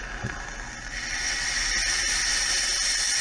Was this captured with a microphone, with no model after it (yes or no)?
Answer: yes